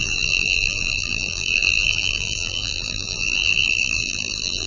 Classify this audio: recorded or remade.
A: remade